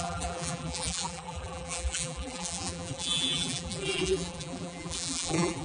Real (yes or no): no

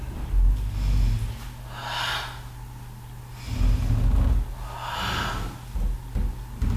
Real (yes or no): yes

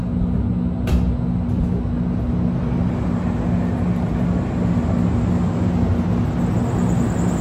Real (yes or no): yes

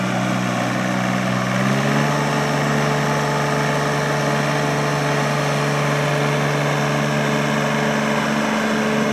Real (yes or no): yes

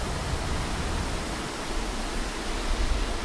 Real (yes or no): yes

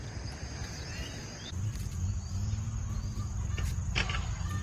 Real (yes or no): yes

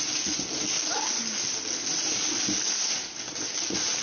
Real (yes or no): yes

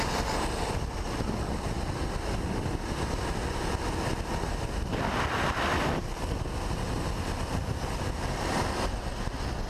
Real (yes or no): yes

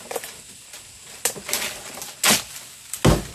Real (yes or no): yes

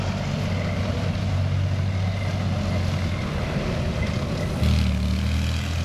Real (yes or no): yes